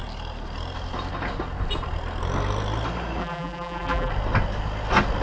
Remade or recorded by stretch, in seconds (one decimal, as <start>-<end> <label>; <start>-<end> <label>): 0.0-3.2 recorded; 3.2-4.1 remade; 4.1-5.2 recorded